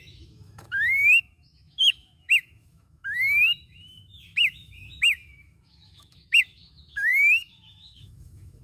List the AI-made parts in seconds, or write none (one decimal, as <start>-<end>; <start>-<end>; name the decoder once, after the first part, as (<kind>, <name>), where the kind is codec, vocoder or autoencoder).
0.0-8.6 (autoencoder, DAC-VAE)